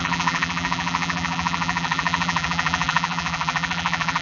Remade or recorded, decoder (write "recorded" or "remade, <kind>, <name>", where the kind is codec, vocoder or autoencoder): remade, vocoder, BigVGAN v2